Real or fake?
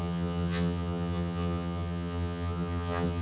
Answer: fake